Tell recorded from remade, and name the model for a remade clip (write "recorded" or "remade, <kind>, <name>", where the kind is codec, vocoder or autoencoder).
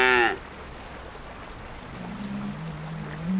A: recorded